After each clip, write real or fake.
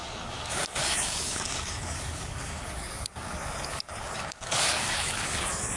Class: fake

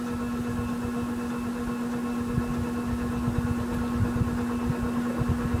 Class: real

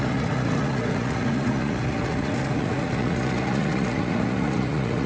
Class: fake